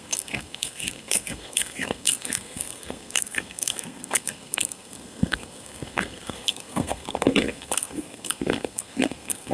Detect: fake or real fake